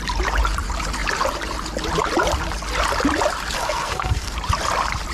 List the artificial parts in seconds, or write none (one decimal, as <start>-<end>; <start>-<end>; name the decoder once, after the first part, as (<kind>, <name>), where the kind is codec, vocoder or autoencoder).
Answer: 3.6-4.3 (codec, SNAC)